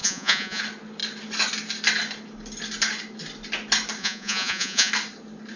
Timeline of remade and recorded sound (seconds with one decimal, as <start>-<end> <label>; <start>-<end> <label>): 0.0-0.6 remade; 0.6-4.0 recorded; 4.0-4.9 remade; 4.9-5.6 recorded